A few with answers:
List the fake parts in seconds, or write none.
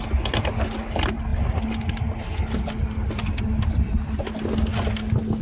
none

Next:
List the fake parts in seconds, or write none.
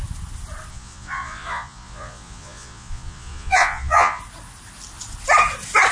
0.7-4.2 (vocoder, Vocos)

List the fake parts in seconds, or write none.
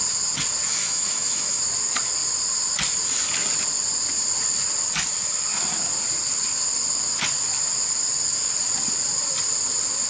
0.7-1.6 (autoencoder, DAC-VAE)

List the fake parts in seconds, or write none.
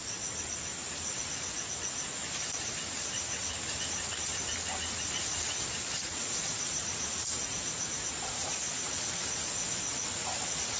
4.3-8.5 (vocoder, BigVGAN v2)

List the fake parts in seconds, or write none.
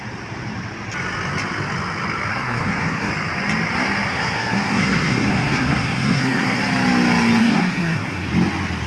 2.3-3.1 (codec, SNAC); 4.1-6.6; 7.4-8.3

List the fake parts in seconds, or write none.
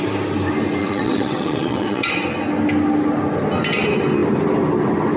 0.8-2.1 (vocoder, WaveNeXt)